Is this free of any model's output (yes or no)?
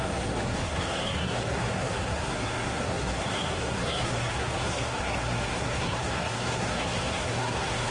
no